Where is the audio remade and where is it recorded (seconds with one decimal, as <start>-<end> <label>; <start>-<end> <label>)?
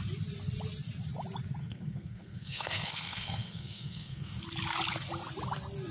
0.0-1.6 recorded; 1.6-4.4 remade; 4.4-5.9 recorded